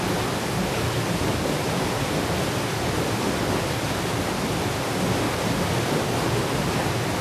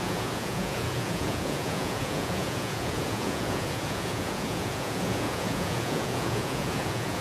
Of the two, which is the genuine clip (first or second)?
first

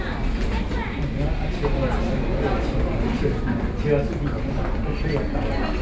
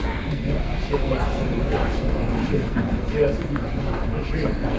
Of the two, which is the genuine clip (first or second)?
first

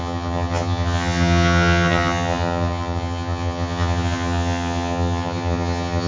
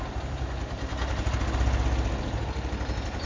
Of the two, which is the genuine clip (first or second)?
second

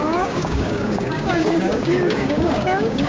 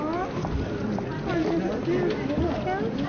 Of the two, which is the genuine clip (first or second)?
second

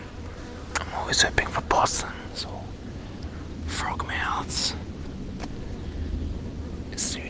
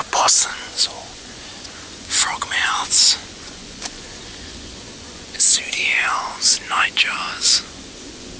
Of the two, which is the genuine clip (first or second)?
first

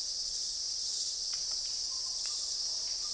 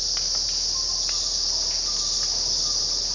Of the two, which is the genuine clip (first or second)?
second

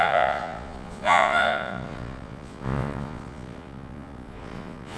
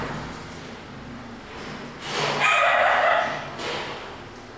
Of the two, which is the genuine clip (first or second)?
second